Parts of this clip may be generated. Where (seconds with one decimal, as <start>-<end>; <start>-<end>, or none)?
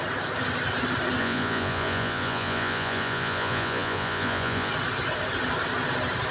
1.2-4.7